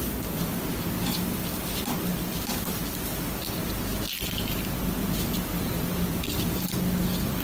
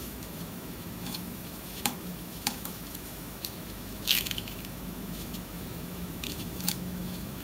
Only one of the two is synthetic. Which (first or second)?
second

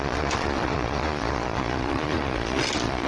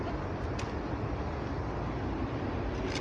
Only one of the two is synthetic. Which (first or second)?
first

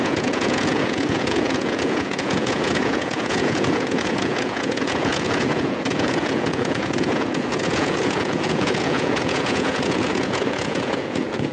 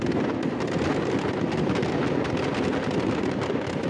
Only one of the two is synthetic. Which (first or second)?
first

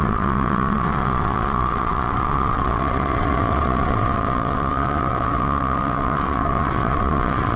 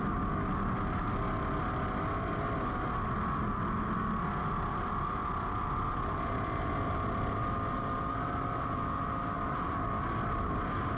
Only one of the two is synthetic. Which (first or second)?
first